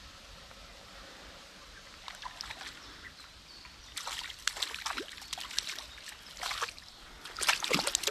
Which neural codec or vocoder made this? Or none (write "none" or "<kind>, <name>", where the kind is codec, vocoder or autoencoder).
none